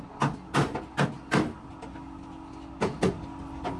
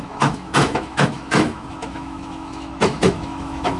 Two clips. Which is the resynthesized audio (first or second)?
second